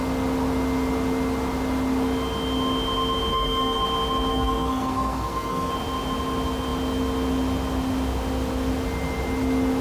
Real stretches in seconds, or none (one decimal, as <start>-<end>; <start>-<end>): 0.0-3.3; 3.8-4.3; 5.7-9.8